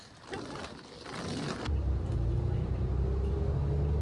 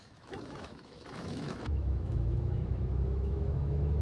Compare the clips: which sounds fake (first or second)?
second